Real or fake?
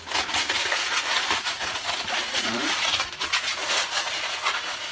fake